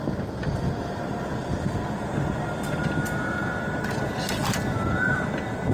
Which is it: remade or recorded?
recorded